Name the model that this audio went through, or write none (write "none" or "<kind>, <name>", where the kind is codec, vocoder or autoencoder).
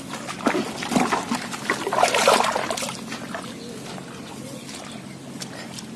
none